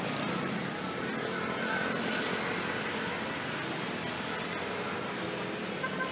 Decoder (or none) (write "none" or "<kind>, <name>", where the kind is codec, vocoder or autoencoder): none